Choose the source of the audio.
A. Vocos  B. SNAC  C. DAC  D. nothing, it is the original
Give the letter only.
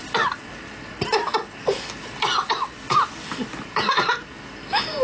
D